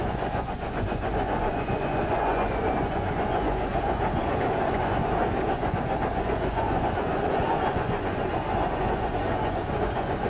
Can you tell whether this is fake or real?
fake